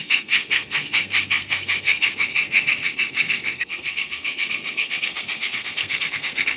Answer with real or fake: fake